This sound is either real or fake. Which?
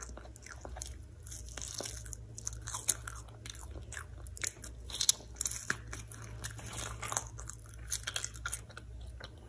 real